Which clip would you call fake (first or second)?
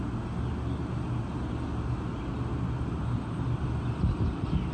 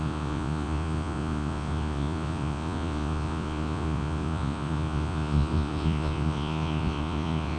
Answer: second